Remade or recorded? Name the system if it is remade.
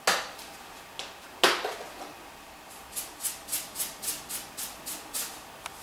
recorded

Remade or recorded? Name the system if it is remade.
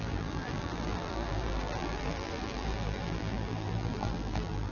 remade, vocoder, BigVGAN v2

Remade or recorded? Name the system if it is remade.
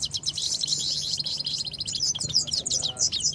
remade, vocoder, BigVGAN v2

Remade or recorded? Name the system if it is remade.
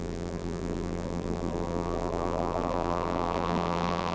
remade, vocoder, BigVGAN v2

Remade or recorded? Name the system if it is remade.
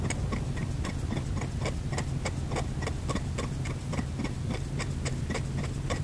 recorded